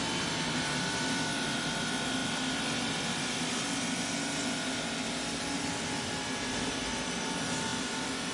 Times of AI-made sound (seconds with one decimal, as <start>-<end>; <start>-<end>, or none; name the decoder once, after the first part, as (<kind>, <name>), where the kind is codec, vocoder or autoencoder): none